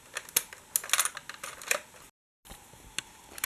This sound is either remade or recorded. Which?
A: recorded